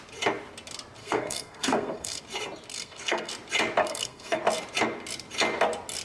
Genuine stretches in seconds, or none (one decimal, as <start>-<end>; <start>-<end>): 0.0-1.0; 2.2-2.7; 3.3-3.8; 4.4-6.0